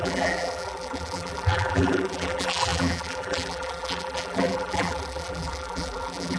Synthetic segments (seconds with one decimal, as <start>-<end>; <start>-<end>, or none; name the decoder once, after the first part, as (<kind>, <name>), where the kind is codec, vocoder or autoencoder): 0.0-6.4 (vocoder, BigVGAN v2)